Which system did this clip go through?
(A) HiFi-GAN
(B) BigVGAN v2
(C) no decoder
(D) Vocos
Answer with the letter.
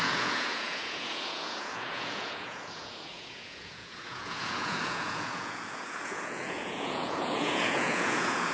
D